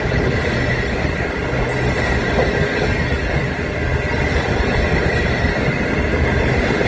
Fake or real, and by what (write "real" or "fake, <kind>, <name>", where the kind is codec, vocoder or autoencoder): real